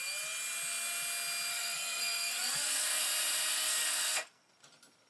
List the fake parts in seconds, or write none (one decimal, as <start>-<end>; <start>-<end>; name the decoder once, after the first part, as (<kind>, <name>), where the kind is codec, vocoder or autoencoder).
1.5-3.0 (codec, SNAC); 3.5-4.5